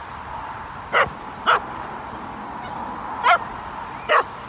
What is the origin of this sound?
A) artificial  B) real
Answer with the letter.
B